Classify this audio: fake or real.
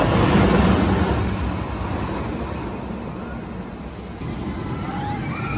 real